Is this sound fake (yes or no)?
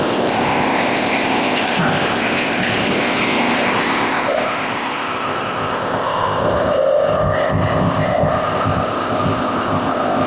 yes